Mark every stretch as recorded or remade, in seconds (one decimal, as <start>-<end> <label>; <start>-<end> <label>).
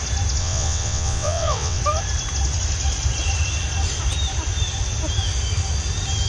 0.0-0.4 recorded; 0.4-1.8 remade; 1.8-6.3 recorded